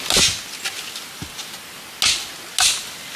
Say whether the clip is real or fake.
real